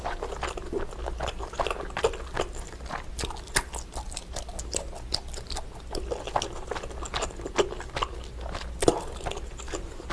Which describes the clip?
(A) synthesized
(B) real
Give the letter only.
B